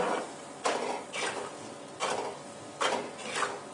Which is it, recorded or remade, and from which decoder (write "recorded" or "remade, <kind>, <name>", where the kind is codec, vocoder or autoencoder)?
recorded